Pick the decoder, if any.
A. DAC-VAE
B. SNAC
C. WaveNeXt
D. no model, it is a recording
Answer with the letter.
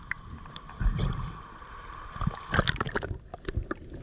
D